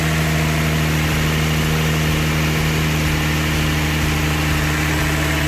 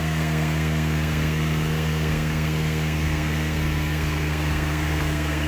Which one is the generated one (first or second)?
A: second